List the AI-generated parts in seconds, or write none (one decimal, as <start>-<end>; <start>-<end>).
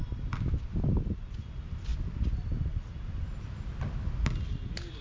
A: none